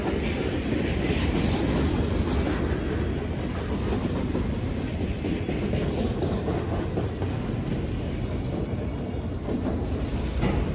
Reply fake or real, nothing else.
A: real